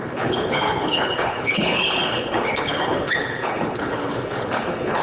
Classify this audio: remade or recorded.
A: remade